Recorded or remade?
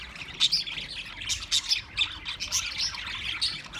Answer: recorded